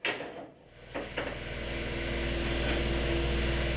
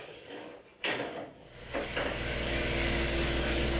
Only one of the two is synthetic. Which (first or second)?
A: second